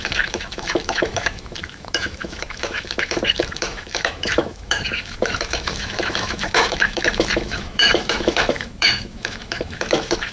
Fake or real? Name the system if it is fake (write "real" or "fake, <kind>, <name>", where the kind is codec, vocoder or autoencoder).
fake, autoencoder, DAC-VAE